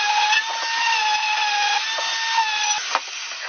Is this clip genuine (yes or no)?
yes